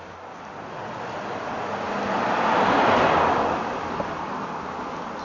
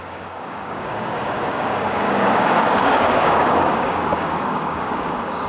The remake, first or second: second